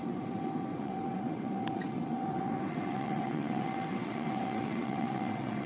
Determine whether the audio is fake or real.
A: fake